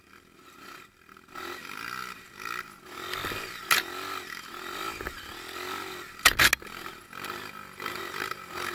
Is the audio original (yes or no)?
yes